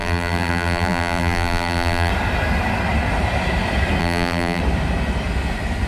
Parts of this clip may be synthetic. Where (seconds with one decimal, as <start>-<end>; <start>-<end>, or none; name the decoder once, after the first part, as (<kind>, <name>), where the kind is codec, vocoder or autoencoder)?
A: 0.0-2.1 (vocoder, BigVGAN v2); 4.0-4.6